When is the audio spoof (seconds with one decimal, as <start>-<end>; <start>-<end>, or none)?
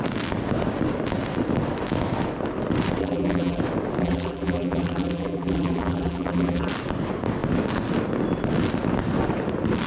3.0-3.6; 4.0-6.7